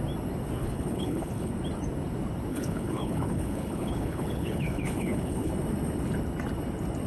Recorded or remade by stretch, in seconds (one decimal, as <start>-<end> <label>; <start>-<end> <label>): 0.0-0.6 recorded; 0.6-1.5 remade; 1.5-2.5 recorded; 2.5-5.5 remade; 5.5-7.1 recorded

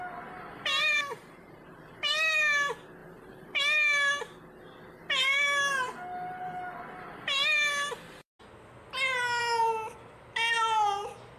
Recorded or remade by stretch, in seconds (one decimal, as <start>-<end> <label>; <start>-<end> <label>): 0.0-1.1 recorded; 1.1-1.7 remade; 1.7-3.0 recorded; 3.0-3.6 remade; 3.6-11.4 recorded

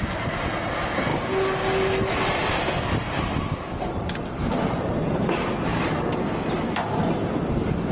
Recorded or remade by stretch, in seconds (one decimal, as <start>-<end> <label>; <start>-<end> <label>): 0.0-7.9 recorded

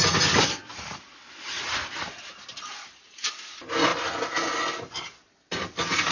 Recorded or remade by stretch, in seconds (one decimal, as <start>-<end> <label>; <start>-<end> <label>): 0.0-6.1 recorded